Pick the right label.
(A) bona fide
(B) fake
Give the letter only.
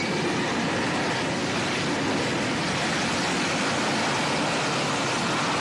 A